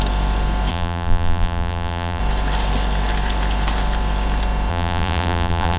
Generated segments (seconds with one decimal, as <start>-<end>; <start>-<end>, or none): 0.7-2.2; 4.7-5.8

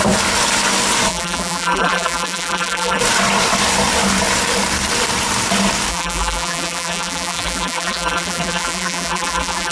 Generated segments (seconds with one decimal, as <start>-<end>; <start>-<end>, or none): 1.1-3.0; 5.9-9.7

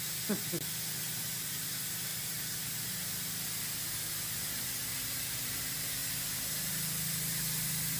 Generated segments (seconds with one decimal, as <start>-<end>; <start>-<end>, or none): 2.1-3.2; 4.9-5.6